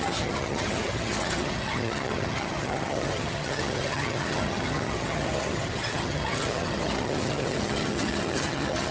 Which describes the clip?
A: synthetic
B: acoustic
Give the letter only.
A